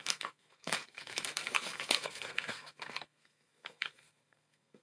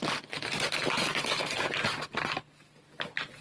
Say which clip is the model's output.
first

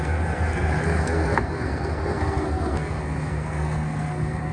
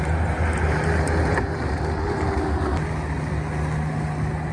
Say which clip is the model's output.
first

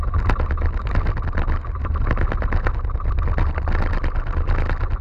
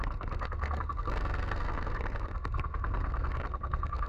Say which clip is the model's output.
second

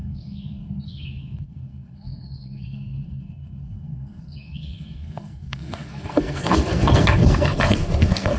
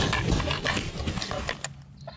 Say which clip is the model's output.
first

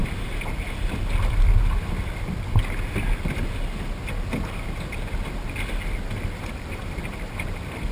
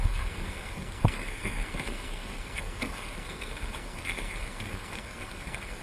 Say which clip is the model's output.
second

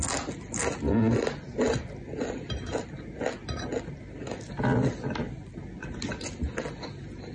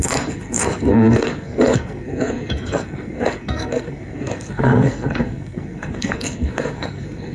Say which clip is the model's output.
second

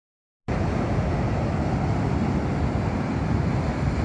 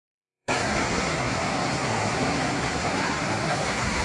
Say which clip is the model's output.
second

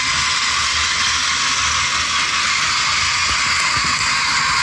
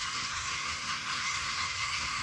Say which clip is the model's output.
second